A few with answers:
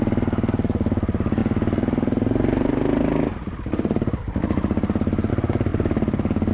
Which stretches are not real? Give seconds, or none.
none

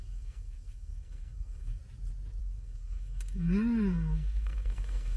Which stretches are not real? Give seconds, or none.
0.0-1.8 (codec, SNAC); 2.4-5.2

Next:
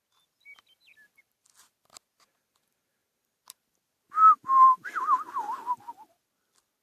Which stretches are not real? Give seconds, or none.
none